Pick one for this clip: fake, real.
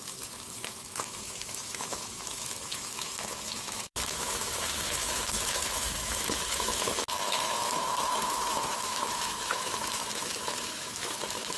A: fake